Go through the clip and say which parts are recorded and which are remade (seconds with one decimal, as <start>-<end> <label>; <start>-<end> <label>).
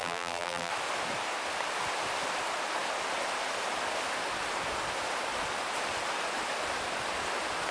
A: 0.0-0.7 remade; 0.7-7.7 recorded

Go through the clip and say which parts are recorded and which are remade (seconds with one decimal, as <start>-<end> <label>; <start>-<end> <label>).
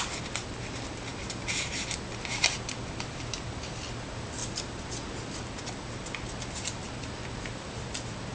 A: 0.0-8.3 recorded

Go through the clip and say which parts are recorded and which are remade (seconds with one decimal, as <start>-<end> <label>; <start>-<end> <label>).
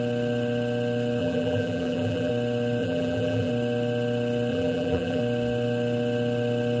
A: 0.0-1.2 recorded; 1.2-2.3 remade; 2.3-2.8 recorded; 2.8-3.5 remade; 3.5-4.5 recorded; 4.5-5.2 remade; 5.2-6.8 recorded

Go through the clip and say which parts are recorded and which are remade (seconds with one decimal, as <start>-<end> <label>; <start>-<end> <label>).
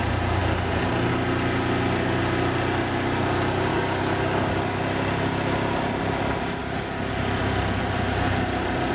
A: 0.0-3.7 recorded; 3.7-4.8 remade; 4.8-6.6 recorded; 6.6-7.1 remade; 7.1-8.9 recorded